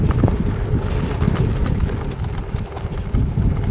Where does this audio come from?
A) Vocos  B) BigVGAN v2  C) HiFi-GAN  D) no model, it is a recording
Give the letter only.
D